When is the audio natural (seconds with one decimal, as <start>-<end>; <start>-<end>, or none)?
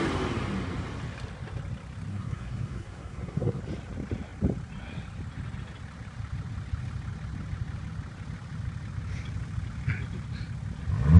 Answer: 0.0-2.1; 3.6-11.2